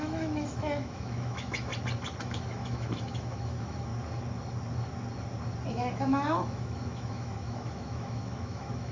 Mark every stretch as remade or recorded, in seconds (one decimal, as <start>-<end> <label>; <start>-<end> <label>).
0.0-1.7 remade; 1.7-2.2 recorded; 2.2-3.9 remade; 3.9-5.7 recorded; 5.7-8.9 remade